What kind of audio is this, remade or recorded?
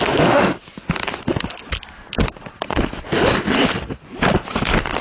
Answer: recorded